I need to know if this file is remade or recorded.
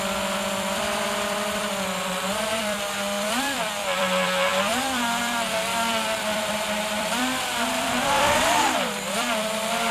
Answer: remade